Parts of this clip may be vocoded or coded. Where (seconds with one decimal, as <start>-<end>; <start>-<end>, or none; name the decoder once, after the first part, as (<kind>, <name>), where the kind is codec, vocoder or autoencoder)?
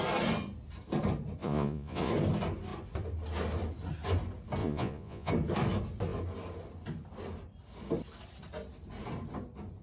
1.4-2.1 (vocoder, Vocos); 4.6-5.3